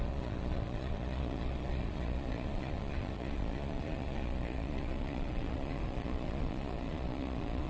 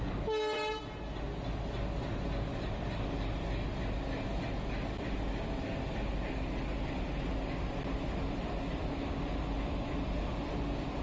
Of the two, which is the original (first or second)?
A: second